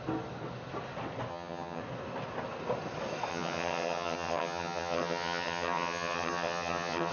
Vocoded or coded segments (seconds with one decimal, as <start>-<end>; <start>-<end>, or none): 1.3-1.8; 3.3-7.1